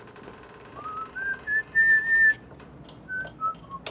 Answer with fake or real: real